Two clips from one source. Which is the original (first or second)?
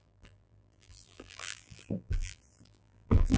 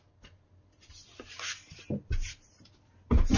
second